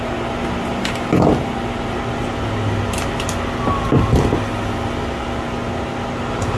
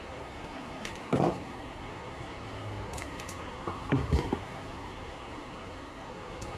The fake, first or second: second